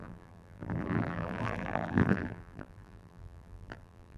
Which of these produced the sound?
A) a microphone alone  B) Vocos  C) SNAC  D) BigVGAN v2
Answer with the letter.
D